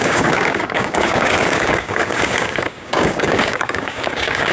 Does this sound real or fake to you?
fake